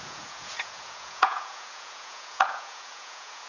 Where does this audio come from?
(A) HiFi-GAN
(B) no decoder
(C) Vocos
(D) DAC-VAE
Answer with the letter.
C